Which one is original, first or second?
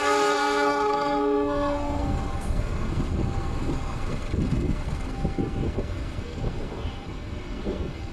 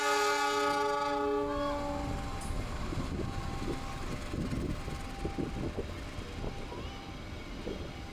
second